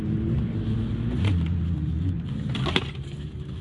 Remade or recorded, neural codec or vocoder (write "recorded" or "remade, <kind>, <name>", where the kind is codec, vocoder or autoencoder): recorded